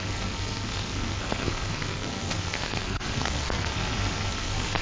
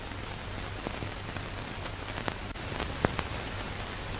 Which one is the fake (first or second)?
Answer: first